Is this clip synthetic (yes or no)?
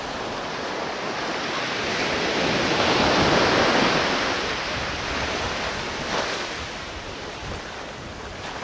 yes